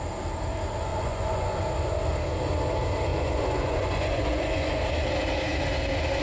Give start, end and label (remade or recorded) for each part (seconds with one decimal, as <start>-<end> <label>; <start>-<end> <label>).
0.0-0.9 recorded; 0.9-1.6 remade; 1.6-3.1 recorded; 3.1-4.8 remade; 4.8-6.2 recorded